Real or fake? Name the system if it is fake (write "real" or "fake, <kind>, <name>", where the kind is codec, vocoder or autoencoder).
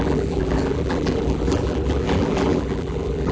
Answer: fake, vocoder, BigVGAN v2